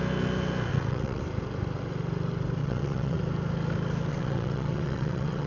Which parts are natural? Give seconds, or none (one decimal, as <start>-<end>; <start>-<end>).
0.0-0.7; 1.2-2.6; 3.2-4.1